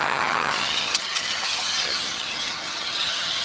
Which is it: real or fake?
fake